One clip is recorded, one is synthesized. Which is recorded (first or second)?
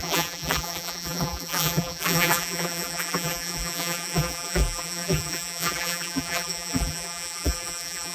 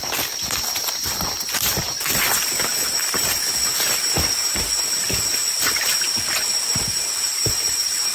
second